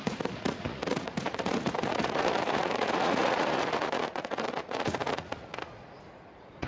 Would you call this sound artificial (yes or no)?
yes